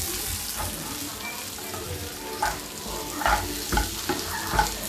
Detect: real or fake real